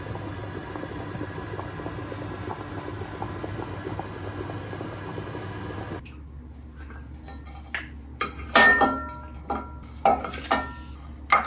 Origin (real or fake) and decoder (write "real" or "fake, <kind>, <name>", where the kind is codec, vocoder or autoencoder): real